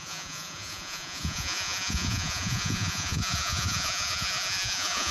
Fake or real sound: fake